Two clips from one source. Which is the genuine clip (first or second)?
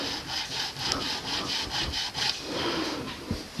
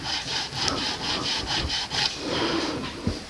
first